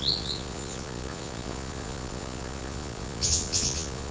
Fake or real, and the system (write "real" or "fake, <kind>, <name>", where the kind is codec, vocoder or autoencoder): fake, vocoder, Vocos